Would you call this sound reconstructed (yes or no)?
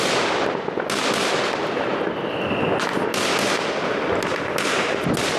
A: no